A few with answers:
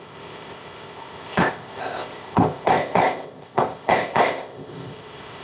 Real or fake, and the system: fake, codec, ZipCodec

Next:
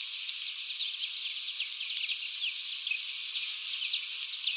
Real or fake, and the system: real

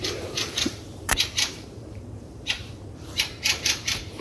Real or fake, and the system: fake, vocoder, BigVGAN v2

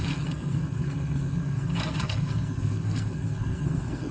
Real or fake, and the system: fake, codec, SNAC